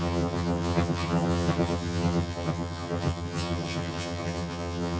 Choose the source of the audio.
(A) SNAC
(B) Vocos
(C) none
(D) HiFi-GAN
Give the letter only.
D